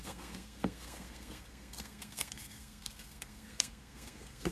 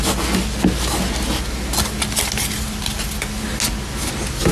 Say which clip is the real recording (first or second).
second